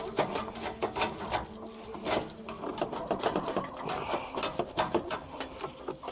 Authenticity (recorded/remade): recorded